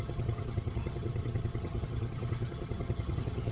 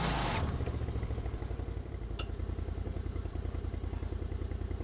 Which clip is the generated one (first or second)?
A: first